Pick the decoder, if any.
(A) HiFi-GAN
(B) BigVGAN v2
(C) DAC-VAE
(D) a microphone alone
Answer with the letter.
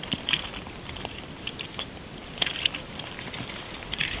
B